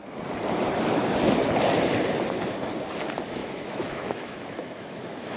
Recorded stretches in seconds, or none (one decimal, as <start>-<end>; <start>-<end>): 0.0-3.4

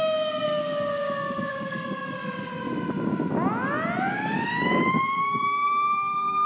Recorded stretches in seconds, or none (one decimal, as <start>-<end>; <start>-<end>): 2.5-4.0

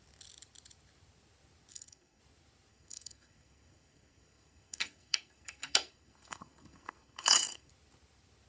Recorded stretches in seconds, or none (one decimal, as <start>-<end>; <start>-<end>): 0.0-1.7; 2.2-2.7; 7.7-8.5

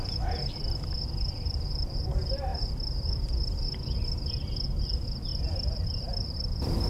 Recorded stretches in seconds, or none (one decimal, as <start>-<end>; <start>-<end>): 2.5-4.2

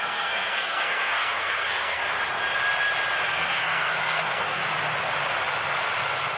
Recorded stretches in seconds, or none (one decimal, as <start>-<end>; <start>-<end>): 2.0-3.3; 4.6-6.4

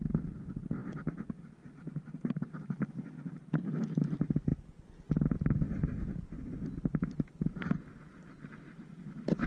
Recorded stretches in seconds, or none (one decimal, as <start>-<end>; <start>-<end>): 0.0-9.5

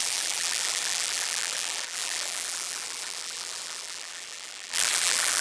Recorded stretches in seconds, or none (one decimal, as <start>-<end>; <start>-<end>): none

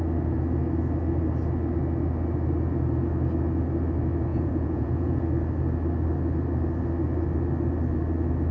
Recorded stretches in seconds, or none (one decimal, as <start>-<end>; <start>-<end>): 0.0-4.3; 5.2-8.5